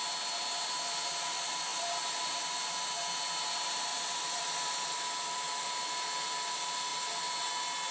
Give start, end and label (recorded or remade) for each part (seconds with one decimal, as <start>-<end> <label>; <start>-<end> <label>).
0.0-1.7 recorded; 1.7-2.2 remade; 2.2-3.9 recorded; 3.9-5.7 remade; 5.7-7.9 recorded